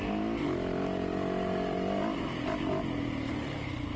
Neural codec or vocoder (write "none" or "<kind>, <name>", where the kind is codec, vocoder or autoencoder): none